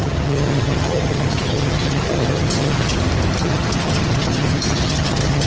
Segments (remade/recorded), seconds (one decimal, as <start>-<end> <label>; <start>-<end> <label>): 0.0-2.9 remade; 2.9-3.4 recorded; 3.4-5.5 remade